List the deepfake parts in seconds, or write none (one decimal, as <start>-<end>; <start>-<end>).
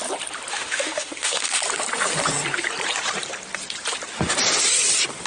0.5-1.6